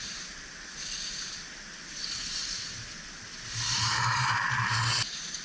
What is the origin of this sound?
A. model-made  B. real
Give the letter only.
B